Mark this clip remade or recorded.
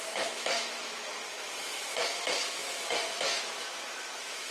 remade